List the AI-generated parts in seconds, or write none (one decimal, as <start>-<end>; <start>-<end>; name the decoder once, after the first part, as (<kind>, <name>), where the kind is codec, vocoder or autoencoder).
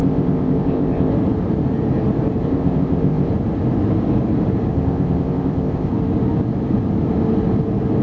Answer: 0.0-1.1 (codec, ZipCodec); 2.4-3.3; 4.7-5.9